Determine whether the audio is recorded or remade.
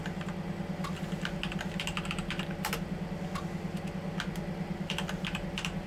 recorded